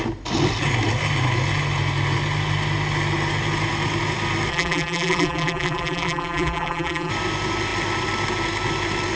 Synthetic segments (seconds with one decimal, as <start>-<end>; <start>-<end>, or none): 4.5-7.1

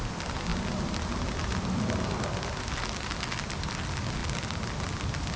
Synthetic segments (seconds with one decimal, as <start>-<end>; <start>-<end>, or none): none

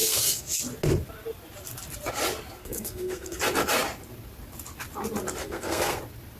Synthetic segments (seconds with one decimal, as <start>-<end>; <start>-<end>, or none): 0.0-0.6; 2.6-3.4; 5.4-6.0

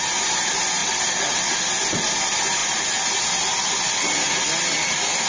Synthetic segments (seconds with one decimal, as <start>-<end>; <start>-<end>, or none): none

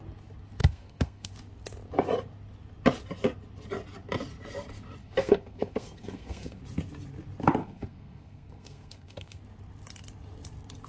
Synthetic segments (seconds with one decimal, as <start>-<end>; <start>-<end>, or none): 0.6-1.3; 5.0-6.6; 7.6-9.4

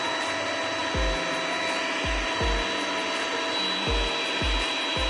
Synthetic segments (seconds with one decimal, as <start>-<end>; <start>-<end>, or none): none

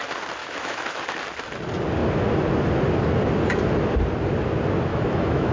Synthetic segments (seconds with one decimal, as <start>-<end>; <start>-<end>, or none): 0.4-1.0; 4.9-5.5

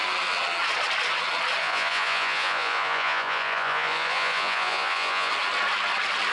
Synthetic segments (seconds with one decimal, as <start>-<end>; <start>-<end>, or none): 1.6-5.3